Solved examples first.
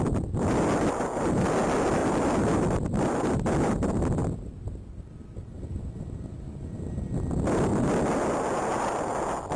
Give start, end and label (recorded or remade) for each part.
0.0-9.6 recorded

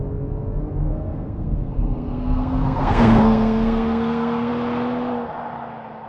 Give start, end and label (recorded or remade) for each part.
0.0-0.8 recorded; 0.8-4.5 remade; 4.5-6.1 recorded

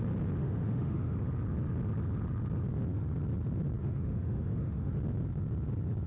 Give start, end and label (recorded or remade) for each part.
0.0-0.4 recorded; 0.4-1.2 remade; 1.2-3.8 recorded; 3.8-4.9 remade; 4.9-6.1 recorded